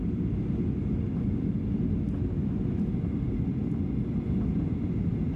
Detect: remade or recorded recorded